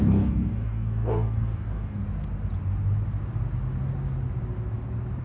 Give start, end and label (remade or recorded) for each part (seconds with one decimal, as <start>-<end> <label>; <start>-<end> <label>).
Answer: 0.0-2.0 remade; 2.0-5.2 recorded